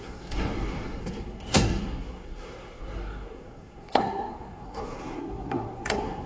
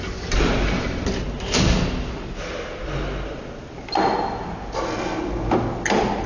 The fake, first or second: first